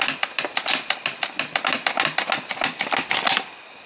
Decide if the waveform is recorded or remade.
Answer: recorded